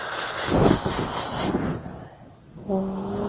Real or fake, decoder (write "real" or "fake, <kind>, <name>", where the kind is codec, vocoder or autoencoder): real